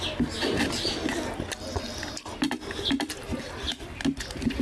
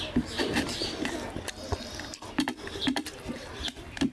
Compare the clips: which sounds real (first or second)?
first